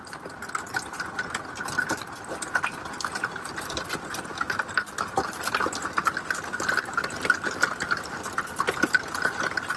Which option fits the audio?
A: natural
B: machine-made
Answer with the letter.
A